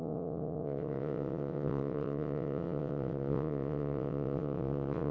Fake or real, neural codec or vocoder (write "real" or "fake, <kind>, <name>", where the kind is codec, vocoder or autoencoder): fake, vocoder, WaveNeXt